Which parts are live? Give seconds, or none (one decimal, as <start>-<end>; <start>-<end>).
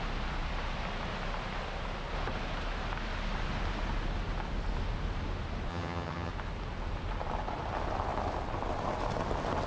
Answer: 0.0-5.7; 6.3-9.7